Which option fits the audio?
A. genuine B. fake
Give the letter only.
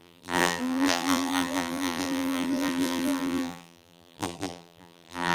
B